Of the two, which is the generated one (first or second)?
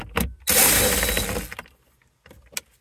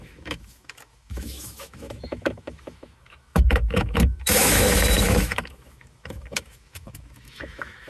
second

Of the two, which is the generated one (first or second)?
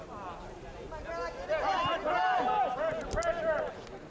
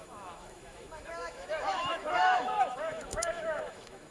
second